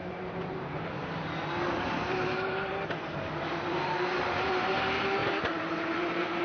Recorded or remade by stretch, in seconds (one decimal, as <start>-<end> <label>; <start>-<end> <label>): 0.0-5.2 remade; 5.2-5.7 recorded; 5.7-6.4 remade